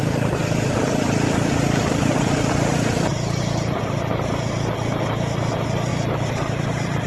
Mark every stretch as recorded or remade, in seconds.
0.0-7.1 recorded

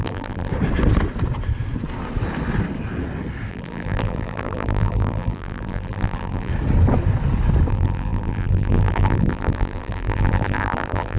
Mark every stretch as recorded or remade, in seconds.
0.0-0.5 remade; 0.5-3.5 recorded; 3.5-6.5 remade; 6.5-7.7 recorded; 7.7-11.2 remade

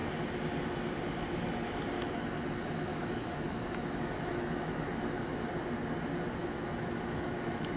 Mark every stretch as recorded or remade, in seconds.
0.0-2.9 recorded; 2.9-5.5 remade; 5.5-6.4 recorded; 6.4-7.8 remade

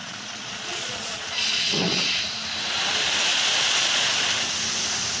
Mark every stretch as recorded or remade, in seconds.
0.0-2.2 remade; 2.2-3.3 recorded; 3.3-4.1 remade; 4.1-5.2 recorded

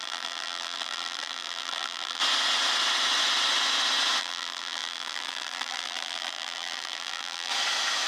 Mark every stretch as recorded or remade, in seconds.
0.0-2.2 remade; 2.2-4.2 recorded; 4.2-7.5 remade; 7.5-8.1 recorded

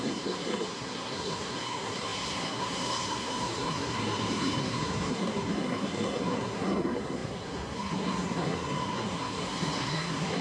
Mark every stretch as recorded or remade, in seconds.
0.0-10.4 remade